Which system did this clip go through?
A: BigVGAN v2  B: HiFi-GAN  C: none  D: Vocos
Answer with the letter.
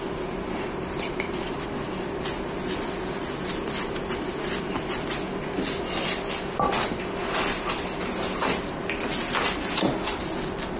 C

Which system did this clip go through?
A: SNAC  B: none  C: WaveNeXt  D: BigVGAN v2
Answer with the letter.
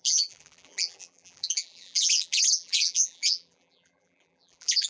D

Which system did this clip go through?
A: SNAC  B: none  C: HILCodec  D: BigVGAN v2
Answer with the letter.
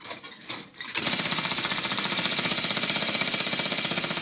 D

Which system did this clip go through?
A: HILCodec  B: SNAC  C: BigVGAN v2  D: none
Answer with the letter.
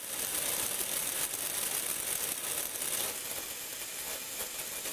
D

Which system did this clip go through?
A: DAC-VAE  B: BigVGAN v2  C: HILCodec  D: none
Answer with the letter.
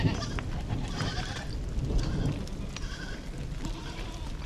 D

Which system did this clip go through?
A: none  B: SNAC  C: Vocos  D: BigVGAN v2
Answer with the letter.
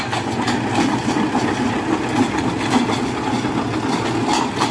A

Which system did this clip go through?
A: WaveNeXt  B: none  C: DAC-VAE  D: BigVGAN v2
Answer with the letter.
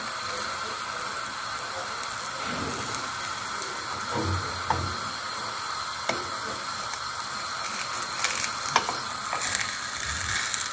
B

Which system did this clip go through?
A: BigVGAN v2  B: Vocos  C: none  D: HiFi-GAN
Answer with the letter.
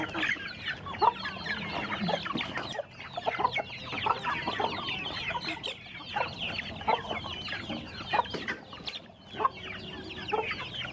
C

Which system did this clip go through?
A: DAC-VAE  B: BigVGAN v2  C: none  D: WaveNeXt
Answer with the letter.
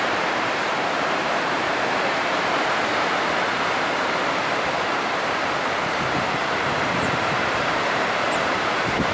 B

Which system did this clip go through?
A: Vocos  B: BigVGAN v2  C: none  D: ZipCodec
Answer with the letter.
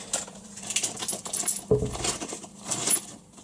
B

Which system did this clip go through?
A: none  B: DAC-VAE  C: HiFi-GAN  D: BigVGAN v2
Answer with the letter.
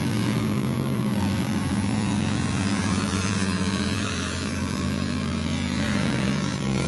D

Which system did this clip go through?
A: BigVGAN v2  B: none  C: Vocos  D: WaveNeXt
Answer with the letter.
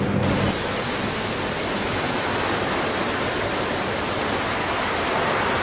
B